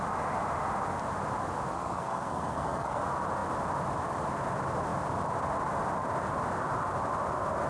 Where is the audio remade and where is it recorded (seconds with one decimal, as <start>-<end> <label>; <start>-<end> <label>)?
0.0-1.7 recorded; 1.7-3.0 remade; 3.0-7.7 recorded